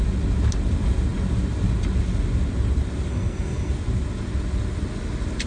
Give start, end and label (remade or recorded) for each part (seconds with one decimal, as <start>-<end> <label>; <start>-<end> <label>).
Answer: 0.0-3.1 recorded; 3.1-3.7 remade; 3.7-5.5 recorded